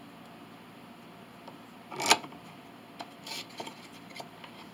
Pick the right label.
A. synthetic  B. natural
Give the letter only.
B